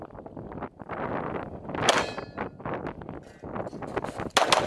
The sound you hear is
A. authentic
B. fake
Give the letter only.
A